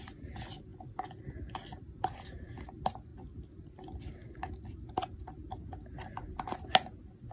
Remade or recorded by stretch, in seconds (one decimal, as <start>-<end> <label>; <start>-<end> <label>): 0.0-7.3 recorded